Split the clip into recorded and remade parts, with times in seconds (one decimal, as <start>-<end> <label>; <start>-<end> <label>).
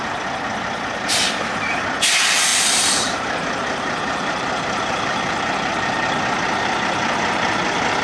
0.0-2.5 recorded; 2.5-5.5 remade; 5.5-8.0 recorded